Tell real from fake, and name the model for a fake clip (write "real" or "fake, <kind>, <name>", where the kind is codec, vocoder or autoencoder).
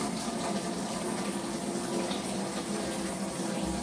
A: real